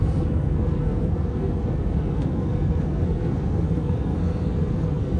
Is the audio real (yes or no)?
no